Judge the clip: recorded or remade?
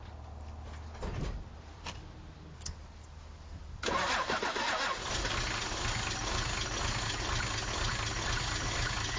recorded